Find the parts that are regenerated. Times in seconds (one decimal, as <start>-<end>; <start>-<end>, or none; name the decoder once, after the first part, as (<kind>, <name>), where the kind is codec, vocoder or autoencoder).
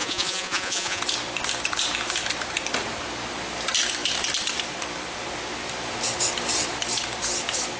0.0-1.0 (vocoder, Vocos)